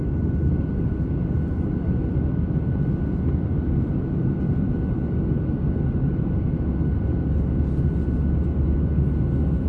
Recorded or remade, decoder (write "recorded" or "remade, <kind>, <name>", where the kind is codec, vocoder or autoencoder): recorded